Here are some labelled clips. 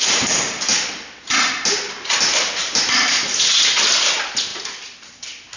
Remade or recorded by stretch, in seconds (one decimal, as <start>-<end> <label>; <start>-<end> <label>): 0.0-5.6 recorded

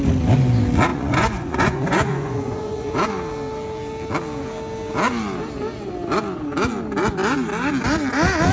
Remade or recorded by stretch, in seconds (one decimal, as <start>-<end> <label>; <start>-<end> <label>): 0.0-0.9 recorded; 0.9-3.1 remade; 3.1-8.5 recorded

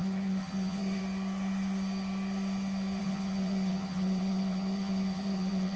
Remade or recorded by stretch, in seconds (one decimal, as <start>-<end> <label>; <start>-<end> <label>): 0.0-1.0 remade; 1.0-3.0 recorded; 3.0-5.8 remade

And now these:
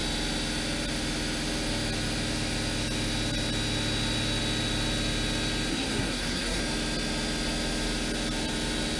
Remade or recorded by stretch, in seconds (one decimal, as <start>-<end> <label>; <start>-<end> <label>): 0.0-5.7 recorded; 5.7-6.6 remade; 6.6-9.0 recorded